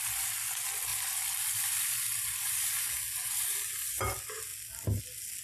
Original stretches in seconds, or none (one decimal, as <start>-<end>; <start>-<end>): 0.0-0.9; 4.0-5.4